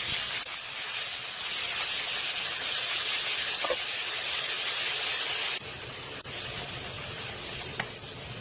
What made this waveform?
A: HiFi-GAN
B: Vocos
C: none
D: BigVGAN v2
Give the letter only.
C